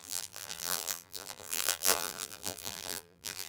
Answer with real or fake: fake